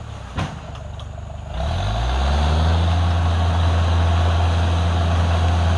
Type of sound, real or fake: real